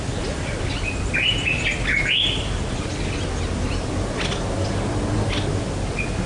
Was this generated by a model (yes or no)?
no